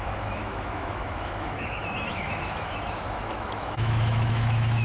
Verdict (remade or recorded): remade